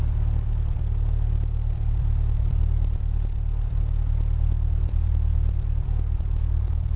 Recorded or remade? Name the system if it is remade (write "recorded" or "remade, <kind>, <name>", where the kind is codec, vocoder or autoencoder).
remade, vocoder, BigVGAN v2